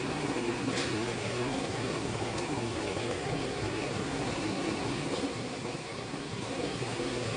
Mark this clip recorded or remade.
remade